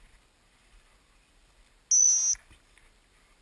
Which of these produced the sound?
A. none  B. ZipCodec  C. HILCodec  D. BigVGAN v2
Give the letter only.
A